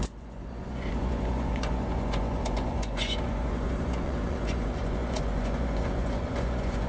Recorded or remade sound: remade